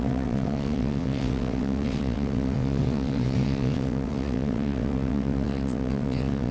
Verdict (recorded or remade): remade